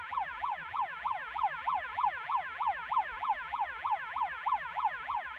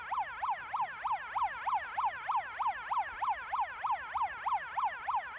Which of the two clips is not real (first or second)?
first